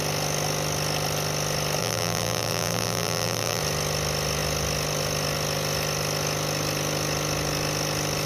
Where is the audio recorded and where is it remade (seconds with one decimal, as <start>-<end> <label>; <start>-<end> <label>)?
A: 0.0-1.8 recorded; 1.8-3.6 remade; 3.6-8.3 recorded